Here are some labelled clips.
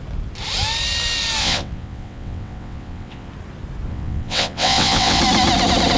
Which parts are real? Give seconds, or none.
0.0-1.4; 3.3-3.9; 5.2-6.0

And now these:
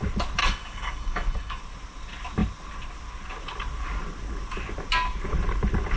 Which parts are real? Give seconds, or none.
0.0-0.4; 1.6-6.0

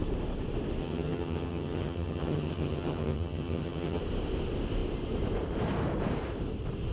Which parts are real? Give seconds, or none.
0.0-0.8; 4.0-6.9